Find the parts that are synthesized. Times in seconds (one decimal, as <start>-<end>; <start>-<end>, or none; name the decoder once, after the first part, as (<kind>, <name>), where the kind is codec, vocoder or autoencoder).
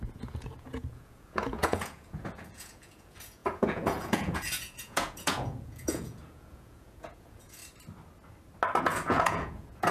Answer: 0.0-7.6 (vocoder, Vocos); 8.8-9.9